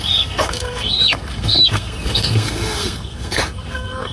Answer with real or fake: fake